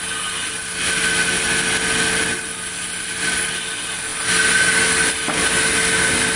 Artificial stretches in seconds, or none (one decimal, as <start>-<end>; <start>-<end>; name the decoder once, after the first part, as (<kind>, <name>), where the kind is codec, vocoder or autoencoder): none